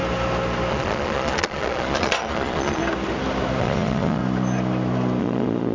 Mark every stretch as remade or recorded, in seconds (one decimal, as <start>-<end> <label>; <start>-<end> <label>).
0.0-0.7 recorded; 0.7-2.8 remade; 2.8-3.6 recorded; 3.6-4.2 remade; 4.2-5.2 recorded; 5.2-5.7 remade